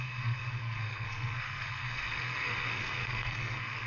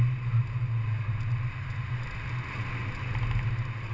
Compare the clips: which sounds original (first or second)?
second